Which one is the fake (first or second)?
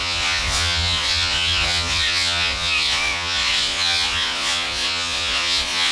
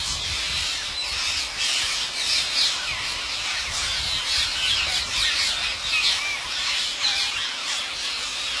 first